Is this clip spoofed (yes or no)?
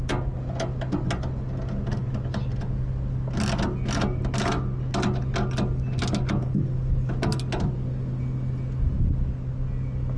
no